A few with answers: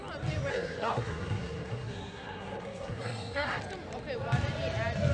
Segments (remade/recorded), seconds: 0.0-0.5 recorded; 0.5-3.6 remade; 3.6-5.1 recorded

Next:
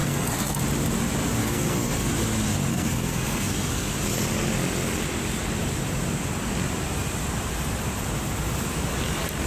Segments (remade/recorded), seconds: 0.0-0.6 remade; 0.6-1.4 recorded; 1.4-2.1 remade; 2.1-2.7 recorded; 2.7-3.9 remade; 3.9-9.5 recorded

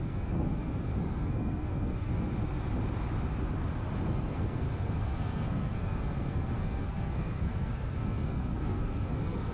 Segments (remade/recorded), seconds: 0.0-2.3 remade; 2.3-4.3 recorded; 4.3-9.5 remade

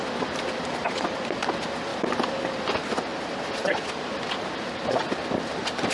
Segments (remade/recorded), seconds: 0.0-5.9 recorded

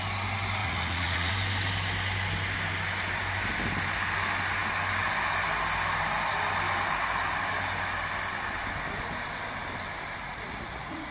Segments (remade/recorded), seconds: 0.0-0.6 recorded; 0.6-1.3 remade; 1.3-10.2 recorded; 10.2-11.1 remade

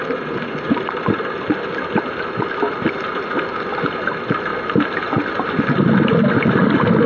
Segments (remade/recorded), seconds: 0.0-7.1 recorded